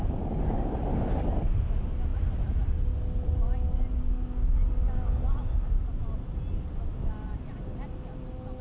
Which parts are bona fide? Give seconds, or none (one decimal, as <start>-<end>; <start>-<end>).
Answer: 0.0-8.6